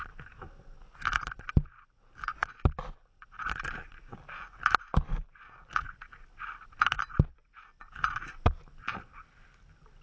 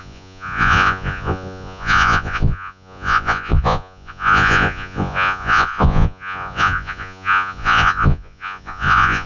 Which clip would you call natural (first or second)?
first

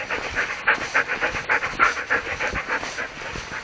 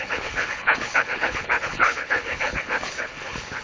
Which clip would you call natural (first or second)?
first